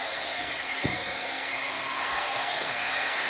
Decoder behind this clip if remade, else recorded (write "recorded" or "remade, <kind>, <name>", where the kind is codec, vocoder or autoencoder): remade, codec, SNAC